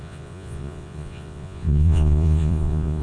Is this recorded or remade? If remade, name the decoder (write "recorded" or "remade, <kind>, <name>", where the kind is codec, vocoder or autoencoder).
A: remade, vocoder, Vocos